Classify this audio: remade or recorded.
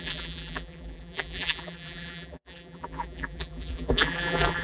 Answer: remade